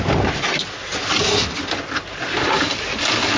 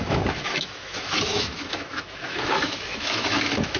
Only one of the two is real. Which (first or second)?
first